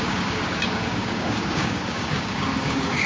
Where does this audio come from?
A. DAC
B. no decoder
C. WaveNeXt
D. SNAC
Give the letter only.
A